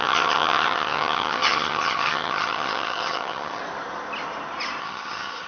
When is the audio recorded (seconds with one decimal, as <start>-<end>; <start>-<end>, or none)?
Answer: 3.6-4.8